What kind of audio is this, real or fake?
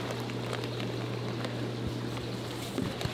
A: real